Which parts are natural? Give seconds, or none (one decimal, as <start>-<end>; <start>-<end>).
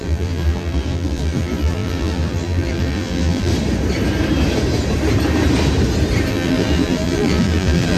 3.5-6.3